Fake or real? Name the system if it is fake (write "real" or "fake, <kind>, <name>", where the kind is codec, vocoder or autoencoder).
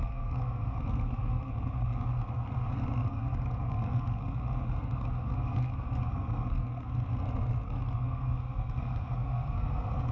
fake, codec, SNAC